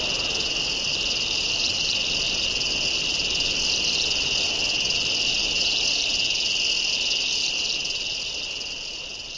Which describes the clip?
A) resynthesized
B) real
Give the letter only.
B